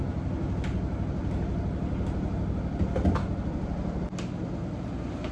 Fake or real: real